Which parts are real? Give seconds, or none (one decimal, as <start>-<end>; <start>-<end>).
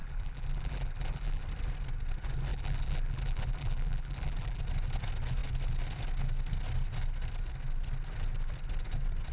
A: 1.4-2.5; 4.6-9.3